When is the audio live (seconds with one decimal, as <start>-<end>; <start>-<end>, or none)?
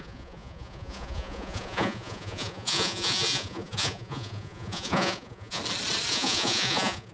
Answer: 5.6-6.1